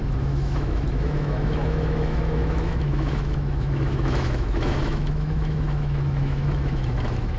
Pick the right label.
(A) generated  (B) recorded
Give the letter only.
A